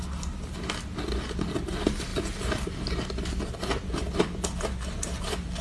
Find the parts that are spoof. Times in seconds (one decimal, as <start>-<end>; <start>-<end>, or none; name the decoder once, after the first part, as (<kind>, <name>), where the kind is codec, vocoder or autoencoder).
none